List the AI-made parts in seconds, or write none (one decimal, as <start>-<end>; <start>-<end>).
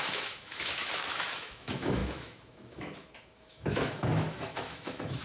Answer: 0.0-5.2